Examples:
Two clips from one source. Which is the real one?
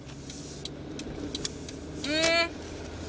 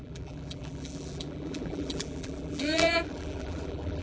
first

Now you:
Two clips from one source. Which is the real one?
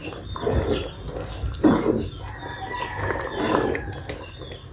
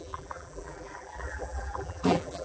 first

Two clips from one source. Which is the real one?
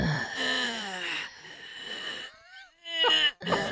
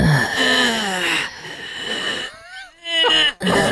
second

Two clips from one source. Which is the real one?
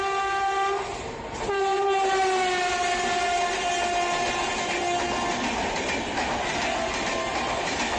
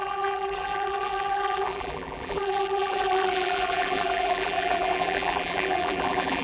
first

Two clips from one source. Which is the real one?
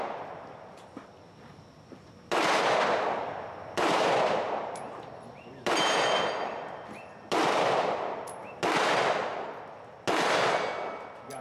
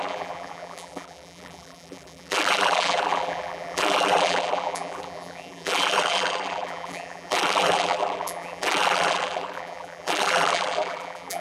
first